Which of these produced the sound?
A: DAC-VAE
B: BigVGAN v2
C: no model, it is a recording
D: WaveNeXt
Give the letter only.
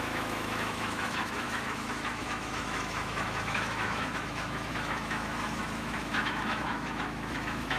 A